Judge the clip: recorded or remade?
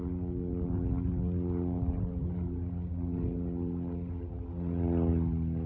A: recorded